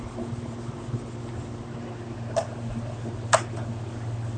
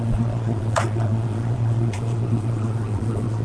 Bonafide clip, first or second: first